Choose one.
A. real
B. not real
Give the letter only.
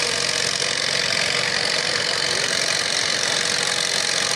B